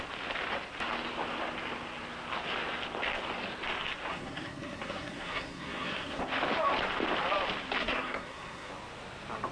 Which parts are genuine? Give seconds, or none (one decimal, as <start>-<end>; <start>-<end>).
0.0-4.1; 6.2-7.8; 8.7-9.5